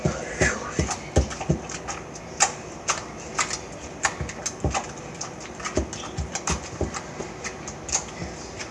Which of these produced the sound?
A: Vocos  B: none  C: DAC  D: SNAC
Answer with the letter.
B